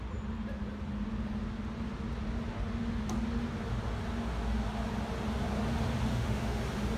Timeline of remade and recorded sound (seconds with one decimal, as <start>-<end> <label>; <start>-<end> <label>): 0.0-6.1 recorded; 6.1-6.6 remade; 6.6-7.0 recorded